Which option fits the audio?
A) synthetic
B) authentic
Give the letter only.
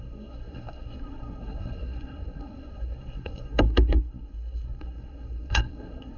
A